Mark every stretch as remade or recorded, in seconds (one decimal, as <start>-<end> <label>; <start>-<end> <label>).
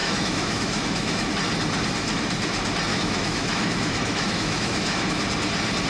0.0-1.3 remade; 1.3-2.9 recorded; 2.9-5.2 remade; 5.2-5.9 recorded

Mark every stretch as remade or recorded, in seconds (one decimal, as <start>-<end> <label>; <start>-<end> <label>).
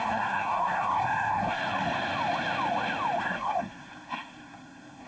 0.0-1.6 remade; 1.6-3.2 recorded; 3.2-5.1 remade